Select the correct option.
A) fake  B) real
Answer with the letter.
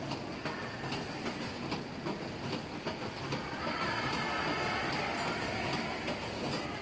B